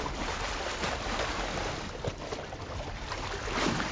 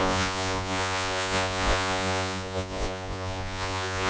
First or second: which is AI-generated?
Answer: second